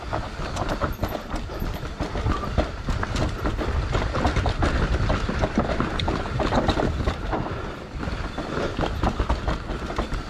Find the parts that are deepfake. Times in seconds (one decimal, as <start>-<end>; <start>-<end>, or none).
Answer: 1.0-2.1